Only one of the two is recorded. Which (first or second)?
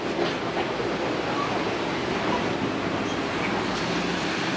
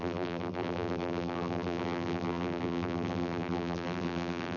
first